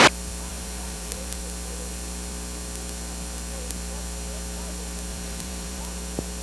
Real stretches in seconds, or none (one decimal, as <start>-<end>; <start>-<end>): 0.0-0.5; 1.4-5.1; 5.8-6.4